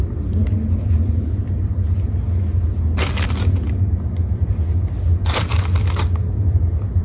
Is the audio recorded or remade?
recorded